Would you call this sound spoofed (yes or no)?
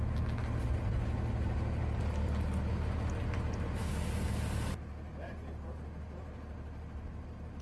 no